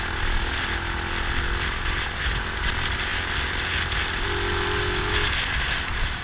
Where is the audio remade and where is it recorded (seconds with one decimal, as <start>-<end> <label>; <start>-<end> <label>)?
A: 0.0-6.2 recorded